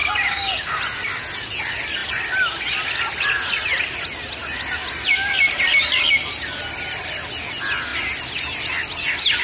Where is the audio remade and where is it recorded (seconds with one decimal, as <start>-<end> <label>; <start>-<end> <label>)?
0.0-0.8 remade; 0.8-9.4 recorded